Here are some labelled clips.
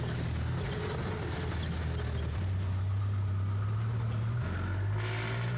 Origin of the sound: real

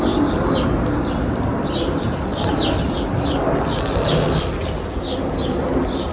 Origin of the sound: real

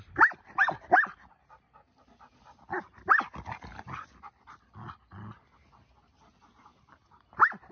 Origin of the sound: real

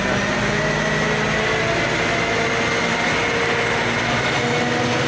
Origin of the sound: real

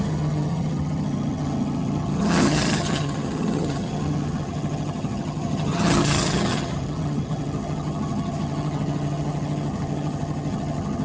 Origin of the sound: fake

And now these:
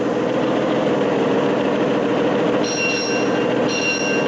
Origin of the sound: real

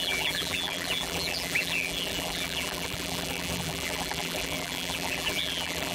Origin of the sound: fake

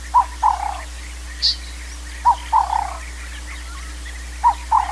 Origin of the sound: real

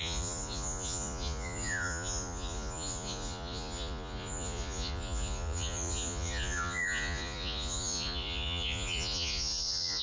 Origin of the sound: fake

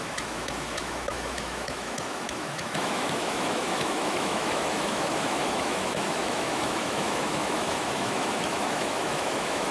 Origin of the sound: fake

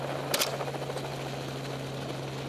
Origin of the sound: real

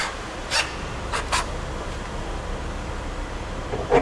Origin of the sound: real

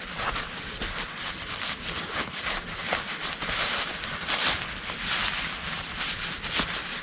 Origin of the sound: real